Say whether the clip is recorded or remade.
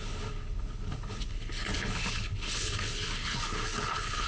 remade